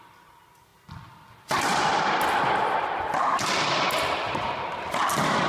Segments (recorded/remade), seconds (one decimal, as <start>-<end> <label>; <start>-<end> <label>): 0.0-5.5 recorded